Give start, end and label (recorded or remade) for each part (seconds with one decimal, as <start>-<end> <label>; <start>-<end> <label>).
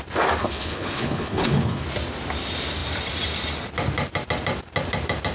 0.0-0.4 recorded; 0.4-1.8 remade; 1.8-5.3 recorded